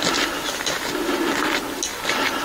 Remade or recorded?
recorded